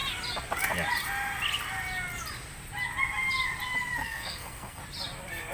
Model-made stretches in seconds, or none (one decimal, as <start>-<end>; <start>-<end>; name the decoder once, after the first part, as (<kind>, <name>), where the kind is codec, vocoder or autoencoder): 4.0-4.8 (codec, SNAC)